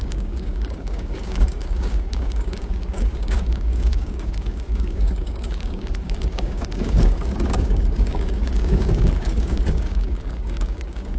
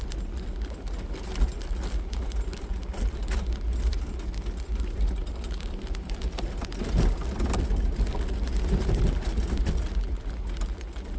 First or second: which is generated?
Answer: first